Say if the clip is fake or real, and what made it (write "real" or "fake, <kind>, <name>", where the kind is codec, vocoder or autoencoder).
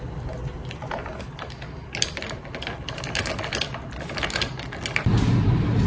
real